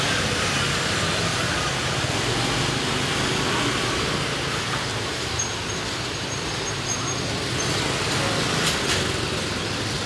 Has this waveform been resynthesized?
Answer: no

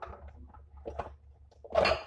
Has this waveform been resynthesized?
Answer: no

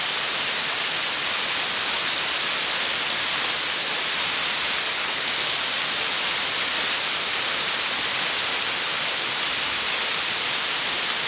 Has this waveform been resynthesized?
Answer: no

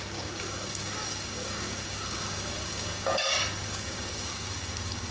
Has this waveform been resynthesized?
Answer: yes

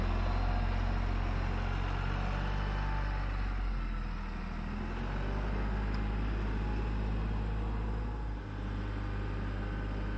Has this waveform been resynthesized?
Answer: no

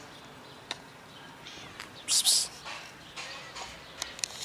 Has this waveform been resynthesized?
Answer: no